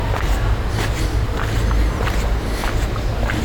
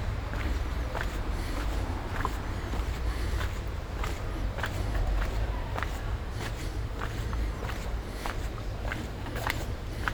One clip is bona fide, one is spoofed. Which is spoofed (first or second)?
second